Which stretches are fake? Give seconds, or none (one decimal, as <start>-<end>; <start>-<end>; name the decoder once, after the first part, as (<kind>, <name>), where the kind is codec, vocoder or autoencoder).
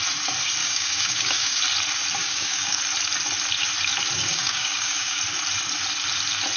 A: 0.6-1.6 (codec, DAC); 2.2-2.8; 4.3-5.2